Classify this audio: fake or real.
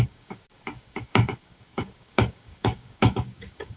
fake